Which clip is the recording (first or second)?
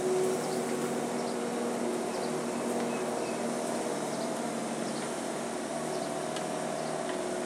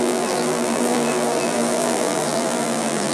first